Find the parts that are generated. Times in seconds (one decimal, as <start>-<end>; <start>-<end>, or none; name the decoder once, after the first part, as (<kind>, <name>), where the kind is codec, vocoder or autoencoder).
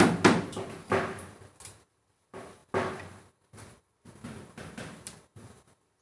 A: none